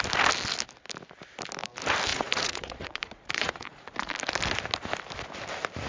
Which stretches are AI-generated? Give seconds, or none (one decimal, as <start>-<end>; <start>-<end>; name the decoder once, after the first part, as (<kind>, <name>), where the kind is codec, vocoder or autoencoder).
2.1-4.1 (vocoder, Vocos)